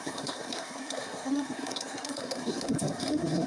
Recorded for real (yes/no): no